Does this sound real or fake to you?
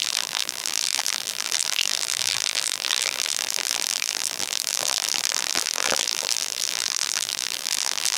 fake